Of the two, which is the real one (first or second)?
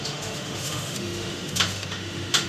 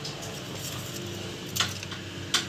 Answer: second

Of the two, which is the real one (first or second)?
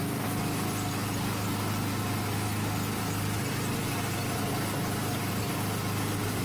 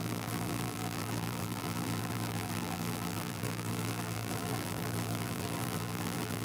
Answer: first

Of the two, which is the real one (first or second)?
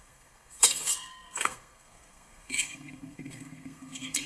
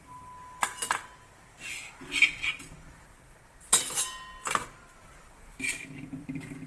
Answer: second